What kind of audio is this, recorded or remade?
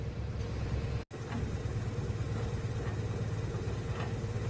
recorded